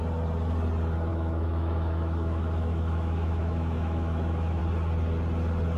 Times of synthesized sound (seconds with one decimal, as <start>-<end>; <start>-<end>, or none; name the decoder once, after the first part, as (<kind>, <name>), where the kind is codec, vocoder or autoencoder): 1.1-4.6 (autoencoder, DAC-VAE)